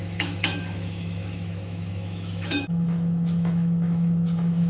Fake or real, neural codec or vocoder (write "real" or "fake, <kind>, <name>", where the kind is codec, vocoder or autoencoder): fake, autoencoder, DAC-VAE